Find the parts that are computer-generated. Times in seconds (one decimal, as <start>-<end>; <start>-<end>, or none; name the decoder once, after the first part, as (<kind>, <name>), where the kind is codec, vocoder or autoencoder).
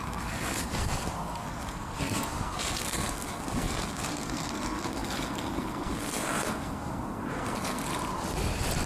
0.0-7.9 (codec, SNAC)